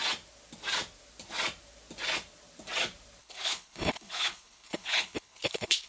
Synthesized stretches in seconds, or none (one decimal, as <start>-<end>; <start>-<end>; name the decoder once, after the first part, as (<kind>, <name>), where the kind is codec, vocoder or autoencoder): 3.2-5.9 (codec, HILCodec)